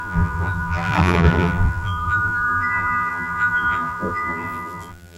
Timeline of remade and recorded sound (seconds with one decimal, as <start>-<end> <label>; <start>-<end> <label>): 0.0-5.2 remade